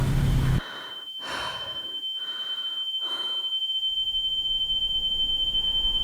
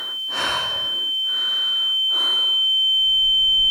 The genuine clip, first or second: second